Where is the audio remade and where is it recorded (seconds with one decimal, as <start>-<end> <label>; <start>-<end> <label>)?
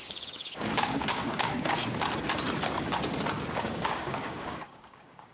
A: 0.0-1.8 remade; 1.8-3.5 recorded; 3.5-5.3 remade